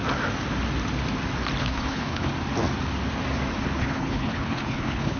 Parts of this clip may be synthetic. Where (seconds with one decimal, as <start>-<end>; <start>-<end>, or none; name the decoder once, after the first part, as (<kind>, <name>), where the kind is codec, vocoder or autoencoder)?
1.6-2.3 (codec, HILCodec); 3.8-5.2